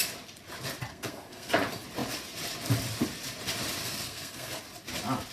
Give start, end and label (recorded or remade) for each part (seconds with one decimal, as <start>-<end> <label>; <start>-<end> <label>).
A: 0.0-0.9 recorded; 0.9-1.5 remade; 1.5-3.8 recorded; 3.8-4.6 remade; 4.6-5.3 recorded